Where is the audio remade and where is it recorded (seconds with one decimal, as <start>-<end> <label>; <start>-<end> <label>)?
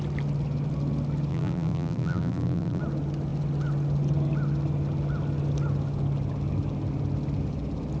0.0-1.3 recorded; 1.3-2.8 remade; 2.8-8.0 recorded